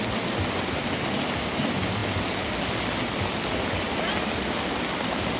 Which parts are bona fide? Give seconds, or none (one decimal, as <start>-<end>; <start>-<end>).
0.0-5.4